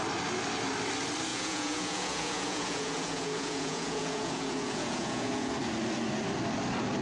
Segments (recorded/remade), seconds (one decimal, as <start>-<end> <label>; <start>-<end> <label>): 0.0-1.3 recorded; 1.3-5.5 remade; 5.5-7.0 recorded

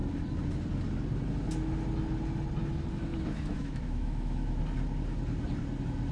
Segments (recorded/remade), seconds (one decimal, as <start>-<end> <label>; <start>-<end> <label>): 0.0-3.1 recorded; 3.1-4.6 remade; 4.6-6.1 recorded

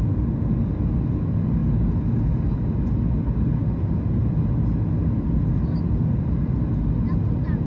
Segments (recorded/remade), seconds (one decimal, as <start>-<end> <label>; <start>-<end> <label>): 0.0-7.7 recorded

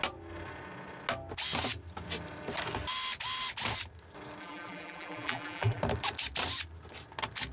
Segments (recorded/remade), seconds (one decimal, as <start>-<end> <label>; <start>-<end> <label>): 0.0-4.4 recorded; 4.4-5.8 remade; 5.8-7.5 recorded